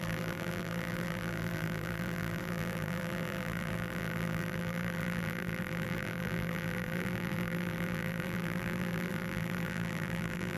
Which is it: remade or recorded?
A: remade